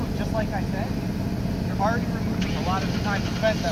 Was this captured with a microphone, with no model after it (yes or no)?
yes